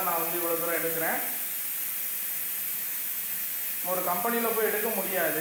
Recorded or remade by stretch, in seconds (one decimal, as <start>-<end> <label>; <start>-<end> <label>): 0.0-2.7 recorded; 2.7-3.8 remade; 3.8-5.4 recorded